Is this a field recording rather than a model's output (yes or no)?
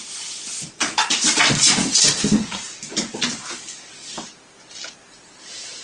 yes